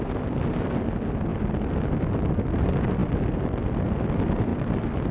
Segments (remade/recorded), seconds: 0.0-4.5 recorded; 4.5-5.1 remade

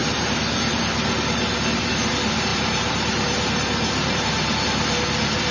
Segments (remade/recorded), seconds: 0.0-2.5 recorded; 2.5-4.3 remade; 4.3-5.5 recorded

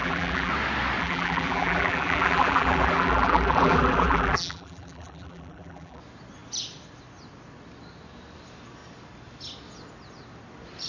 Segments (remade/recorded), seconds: 0.0-0.5 remade; 0.5-1.0 recorded; 1.0-6.0 remade; 6.0-10.9 recorded

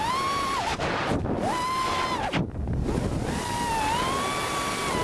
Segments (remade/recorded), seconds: 0.0-5.0 recorded